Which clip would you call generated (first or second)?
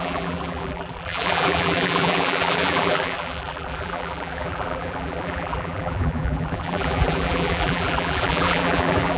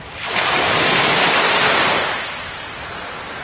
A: first